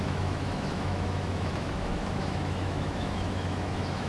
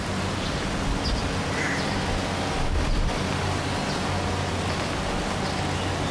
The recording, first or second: second